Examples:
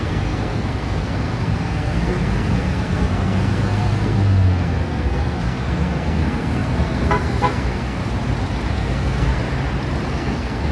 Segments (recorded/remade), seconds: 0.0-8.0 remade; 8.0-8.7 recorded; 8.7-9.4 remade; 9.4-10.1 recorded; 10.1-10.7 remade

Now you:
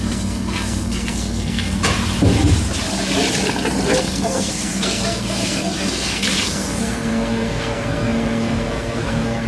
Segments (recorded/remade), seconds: 0.0-1.8 remade; 1.8-4.0 recorded; 4.0-9.5 remade

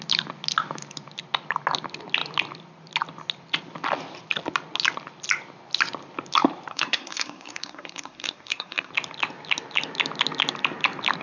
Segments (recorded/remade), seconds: 0.0-6.7 recorded; 6.7-8.9 remade; 8.9-11.2 recorded

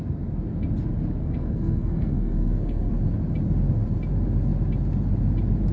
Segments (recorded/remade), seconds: 0.0-1.2 recorded; 1.2-2.9 remade; 2.9-5.7 recorded

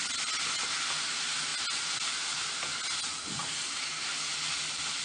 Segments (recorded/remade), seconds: 0.0-5.0 recorded